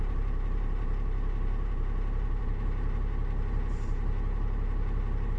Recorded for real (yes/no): no